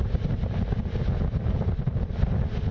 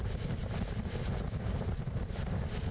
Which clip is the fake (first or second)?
second